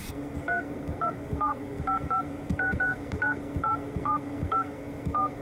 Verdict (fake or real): fake